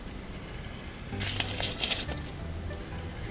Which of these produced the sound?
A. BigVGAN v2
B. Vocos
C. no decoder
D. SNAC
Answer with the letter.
C